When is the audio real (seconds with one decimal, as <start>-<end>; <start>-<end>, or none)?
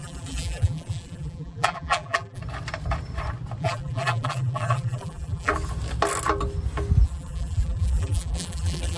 2.4-3.6; 5.5-7.0